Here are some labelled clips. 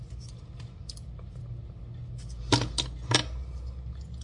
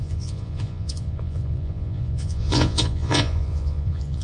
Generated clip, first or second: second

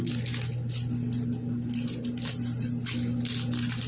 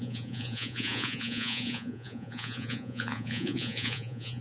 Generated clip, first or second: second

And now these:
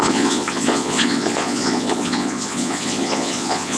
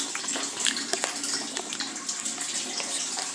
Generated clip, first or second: first